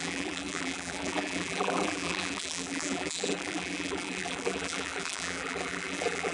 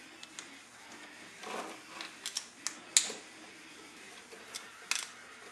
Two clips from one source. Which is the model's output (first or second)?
first